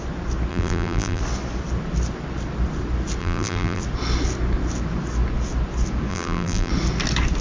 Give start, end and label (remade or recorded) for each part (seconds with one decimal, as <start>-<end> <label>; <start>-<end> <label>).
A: 0.0-0.5 recorded; 0.5-1.2 remade; 1.2-3.2 recorded; 3.2-3.8 remade; 3.8-6.1 recorded; 6.1-6.7 remade; 6.7-7.4 recorded